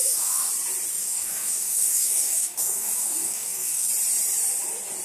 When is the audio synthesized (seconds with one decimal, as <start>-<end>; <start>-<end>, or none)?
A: 0.0-0.5; 0.9-3.9